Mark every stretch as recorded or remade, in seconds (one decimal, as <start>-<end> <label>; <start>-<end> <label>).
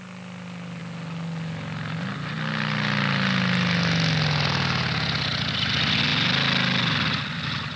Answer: 0.0-7.8 recorded